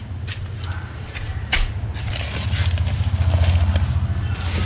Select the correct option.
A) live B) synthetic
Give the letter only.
A